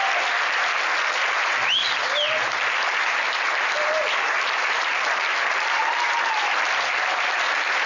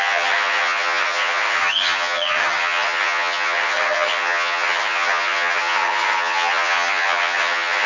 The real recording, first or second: first